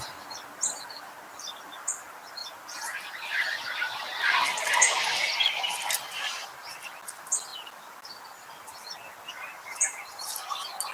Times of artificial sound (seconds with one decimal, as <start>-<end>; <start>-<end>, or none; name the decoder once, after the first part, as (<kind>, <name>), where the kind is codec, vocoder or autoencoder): none